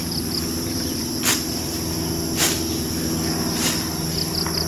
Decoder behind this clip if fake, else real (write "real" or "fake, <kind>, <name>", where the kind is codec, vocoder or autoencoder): fake, vocoder, BigVGAN v2